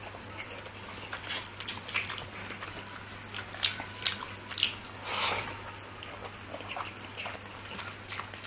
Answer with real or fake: real